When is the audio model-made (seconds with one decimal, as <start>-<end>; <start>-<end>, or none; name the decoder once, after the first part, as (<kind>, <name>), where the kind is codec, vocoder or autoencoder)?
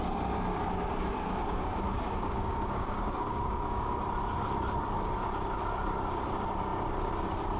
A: 0.5-4.0 (codec, DAC)